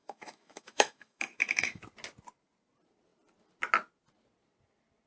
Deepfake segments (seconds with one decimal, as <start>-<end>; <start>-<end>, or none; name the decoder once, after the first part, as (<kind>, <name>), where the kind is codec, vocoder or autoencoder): 0.0-1.8 (autoencoder, DAC-VAE)